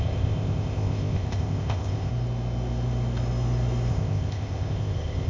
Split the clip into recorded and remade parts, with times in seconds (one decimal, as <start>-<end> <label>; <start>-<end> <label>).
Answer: 0.0-2.1 remade; 2.1-3.9 recorded; 3.9-5.3 remade